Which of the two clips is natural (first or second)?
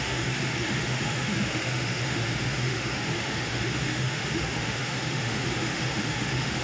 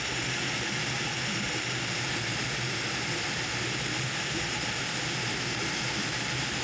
second